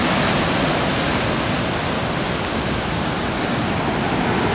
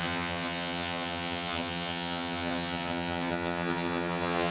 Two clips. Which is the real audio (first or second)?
first